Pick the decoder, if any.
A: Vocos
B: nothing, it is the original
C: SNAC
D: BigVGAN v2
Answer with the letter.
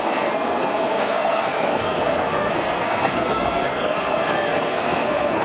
C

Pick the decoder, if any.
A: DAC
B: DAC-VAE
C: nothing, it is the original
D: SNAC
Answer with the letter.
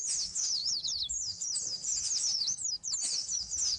B